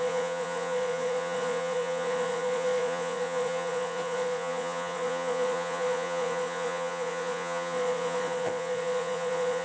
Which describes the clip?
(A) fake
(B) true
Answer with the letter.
A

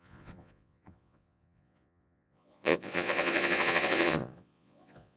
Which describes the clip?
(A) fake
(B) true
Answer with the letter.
A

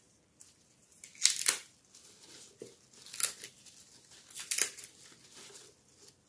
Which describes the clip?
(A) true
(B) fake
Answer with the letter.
A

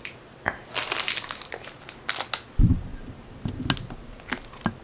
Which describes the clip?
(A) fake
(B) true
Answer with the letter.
B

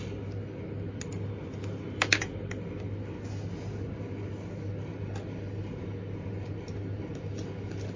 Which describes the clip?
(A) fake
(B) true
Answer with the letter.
B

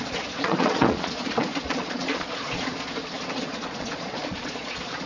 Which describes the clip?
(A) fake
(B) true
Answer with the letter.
A